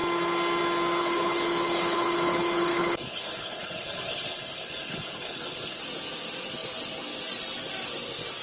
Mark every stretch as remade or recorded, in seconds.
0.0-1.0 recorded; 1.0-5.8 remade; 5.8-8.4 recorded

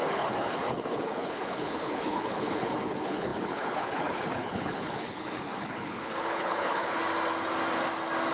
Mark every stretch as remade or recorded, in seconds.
0.0-7.0 remade; 7.0-8.3 recorded

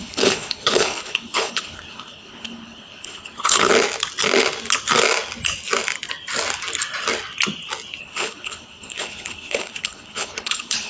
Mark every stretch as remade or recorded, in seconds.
0.0-3.7 remade; 3.7-8.0 recorded; 8.0-10.9 remade

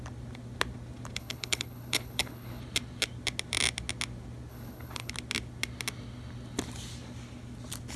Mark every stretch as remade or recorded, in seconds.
0.0-1.2 recorded; 1.2-2.6 remade; 2.6-4.5 recorded; 4.5-5.1 remade; 5.1-8.0 recorded

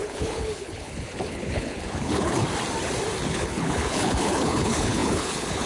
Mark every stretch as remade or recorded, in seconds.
0.0-2.4 remade; 2.4-3.2 recorded; 3.2-5.7 remade